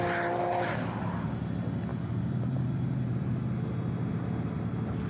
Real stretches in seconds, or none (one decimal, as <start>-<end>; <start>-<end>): 0.0-1.9; 3.4-5.1